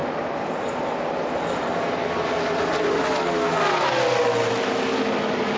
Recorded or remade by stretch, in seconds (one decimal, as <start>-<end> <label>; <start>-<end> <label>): 0.0-5.6 recorded